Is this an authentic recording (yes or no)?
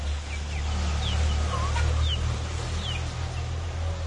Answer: yes